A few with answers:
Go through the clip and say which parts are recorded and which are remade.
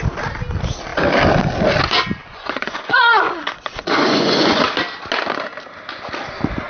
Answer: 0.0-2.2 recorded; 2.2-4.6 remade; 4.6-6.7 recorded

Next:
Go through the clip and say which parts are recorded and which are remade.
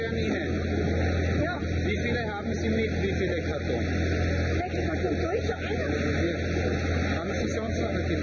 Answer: 0.0-8.2 recorded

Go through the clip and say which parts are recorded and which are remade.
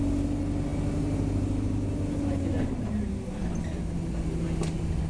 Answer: 0.0-5.1 recorded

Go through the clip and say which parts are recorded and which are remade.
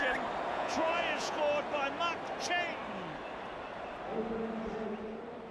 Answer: 0.0-0.5 recorded; 0.5-1.4 remade; 1.4-5.5 recorded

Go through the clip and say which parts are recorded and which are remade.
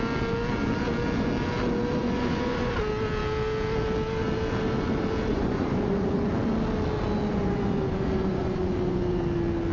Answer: 0.0-2.0 recorded; 2.0-2.8 remade; 2.8-5.3 recorded; 5.3-6.3 remade; 6.3-7.3 recorded; 7.3-9.2 remade; 9.2-9.7 recorded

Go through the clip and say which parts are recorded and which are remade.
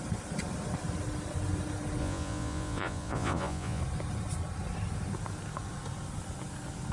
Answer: 0.0-2.0 recorded; 2.0-3.8 remade; 3.8-6.9 recorded